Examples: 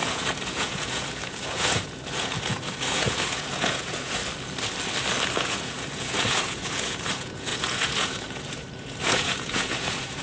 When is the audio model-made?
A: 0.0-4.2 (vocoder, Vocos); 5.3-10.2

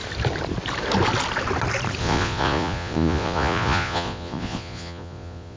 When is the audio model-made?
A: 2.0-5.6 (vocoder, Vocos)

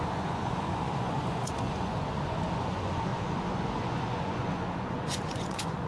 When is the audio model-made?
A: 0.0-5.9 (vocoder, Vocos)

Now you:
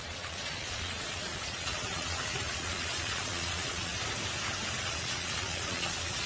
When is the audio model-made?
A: 0.0-3.9 (vocoder, Vocos); 4.8-6.3

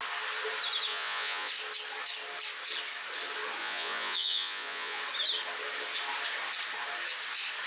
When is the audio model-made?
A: 0.9-1.5 (vocoder, Vocos); 3.6-5.0

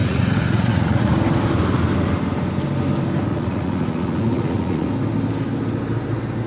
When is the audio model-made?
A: 0.0-1.1 (vocoder, Vocos); 3.3-4.9

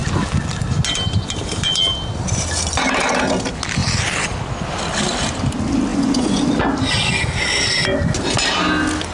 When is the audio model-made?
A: 5.9-6.4 (vocoder, Vocos)

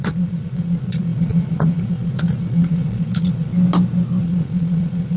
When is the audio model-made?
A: 0.0-3.5 (vocoder, Vocos); 4.2-5.2